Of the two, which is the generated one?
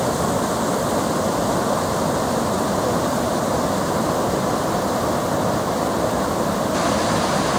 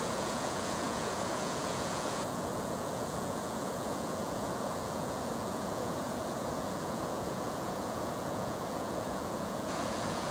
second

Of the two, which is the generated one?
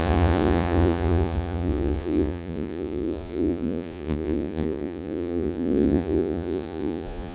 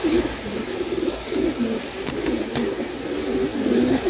first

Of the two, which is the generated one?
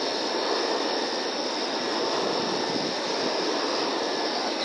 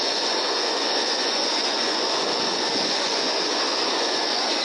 second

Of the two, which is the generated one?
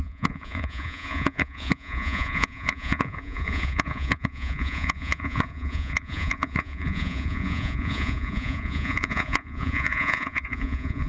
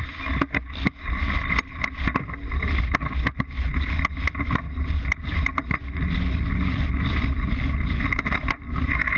first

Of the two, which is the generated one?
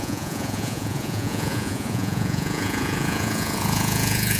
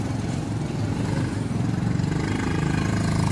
first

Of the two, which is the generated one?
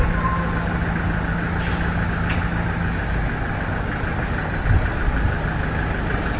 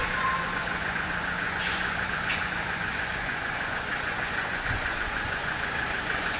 second